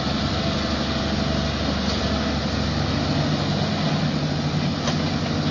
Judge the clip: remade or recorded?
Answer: recorded